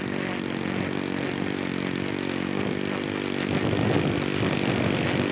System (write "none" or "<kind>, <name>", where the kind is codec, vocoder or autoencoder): none